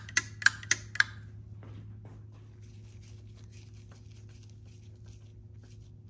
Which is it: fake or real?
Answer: real